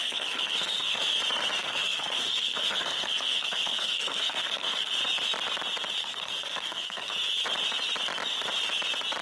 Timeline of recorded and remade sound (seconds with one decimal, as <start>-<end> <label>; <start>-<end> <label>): 0.0-1.0 remade; 1.0-1.6 recorded; 1.6-4.9 remade; 4.9-6.0 recorded; 6.0-7.1 remade; 7.1-9.2 recorded